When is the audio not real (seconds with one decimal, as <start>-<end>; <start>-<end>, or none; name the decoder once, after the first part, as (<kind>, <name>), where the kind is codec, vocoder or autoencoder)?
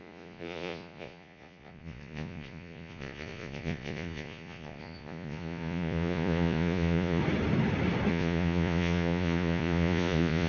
0.0-7.2 (vocoder, Vocos); 8.1-10.5